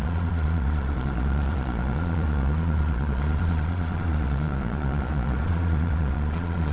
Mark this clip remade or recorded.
remade